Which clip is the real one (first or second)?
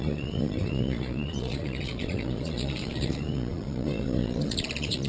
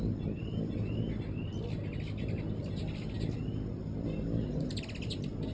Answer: second